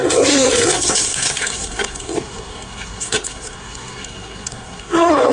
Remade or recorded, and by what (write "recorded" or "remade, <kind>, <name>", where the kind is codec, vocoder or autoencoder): remade, codec, SNAC